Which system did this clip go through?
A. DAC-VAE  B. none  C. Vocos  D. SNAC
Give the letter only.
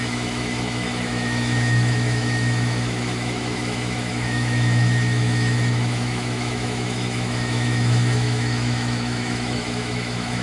A